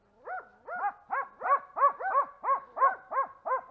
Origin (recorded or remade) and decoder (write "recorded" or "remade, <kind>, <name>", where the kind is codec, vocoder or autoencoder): recorded